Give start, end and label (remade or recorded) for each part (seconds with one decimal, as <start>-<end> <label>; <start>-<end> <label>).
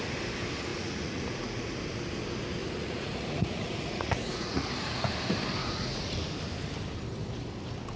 0.0-0.7 recorded; 0.7-1.8 remade; 1.8-2.6 recorded; 2.6-5.1 remade; 5.1-5.6 recorded; 5.6-6.2 remade; 6.2-8.0 recorded